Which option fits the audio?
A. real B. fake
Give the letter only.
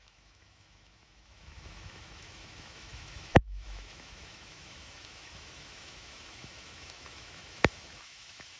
B